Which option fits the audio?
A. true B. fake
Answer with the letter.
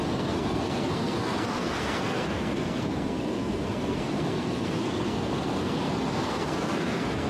B